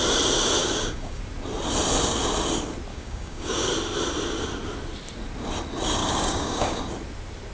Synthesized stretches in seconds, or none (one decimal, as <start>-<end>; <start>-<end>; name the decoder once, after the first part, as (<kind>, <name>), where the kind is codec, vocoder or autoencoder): 0.6-1.2 (codec, DAC); 2.9-3.7; 6.0-6.8

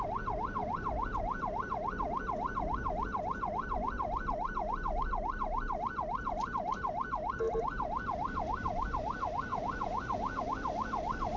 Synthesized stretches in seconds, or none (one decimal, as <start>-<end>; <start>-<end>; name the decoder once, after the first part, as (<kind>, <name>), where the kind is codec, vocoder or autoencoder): 9.5-10.4 (vocoder, Vocos)

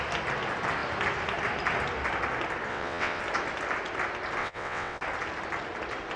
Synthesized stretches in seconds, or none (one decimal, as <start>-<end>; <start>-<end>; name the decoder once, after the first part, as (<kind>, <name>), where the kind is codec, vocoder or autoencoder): 2.7-3.2 (vocoder, WaveNeXt); 4.4-5.0